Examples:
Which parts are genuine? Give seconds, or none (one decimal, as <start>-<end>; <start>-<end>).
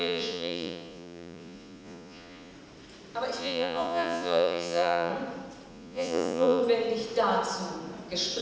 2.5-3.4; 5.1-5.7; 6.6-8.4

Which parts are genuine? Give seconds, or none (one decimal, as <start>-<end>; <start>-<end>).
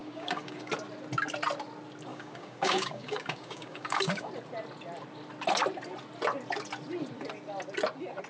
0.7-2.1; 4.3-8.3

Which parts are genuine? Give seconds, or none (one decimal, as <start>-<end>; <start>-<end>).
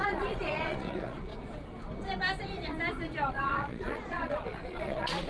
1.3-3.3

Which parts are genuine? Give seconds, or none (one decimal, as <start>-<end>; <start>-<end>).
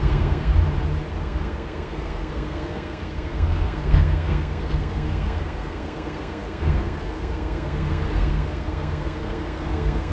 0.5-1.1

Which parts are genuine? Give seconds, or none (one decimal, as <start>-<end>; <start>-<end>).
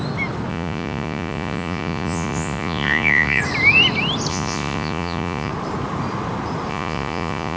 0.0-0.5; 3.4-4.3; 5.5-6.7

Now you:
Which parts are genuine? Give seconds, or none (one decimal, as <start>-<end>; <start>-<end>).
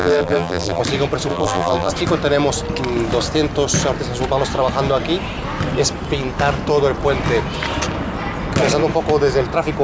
0.8-1.3; 1.9-9.8